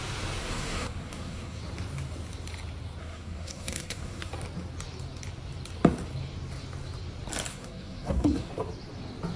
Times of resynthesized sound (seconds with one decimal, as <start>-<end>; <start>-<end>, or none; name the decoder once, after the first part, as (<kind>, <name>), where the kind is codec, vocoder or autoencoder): 0.4-1.6 (codec, SNAC); 3.0-4.3; 7.5-8.5